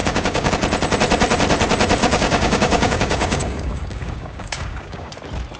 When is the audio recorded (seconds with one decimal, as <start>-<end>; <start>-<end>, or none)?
0.5-2.0; 5.1-5.6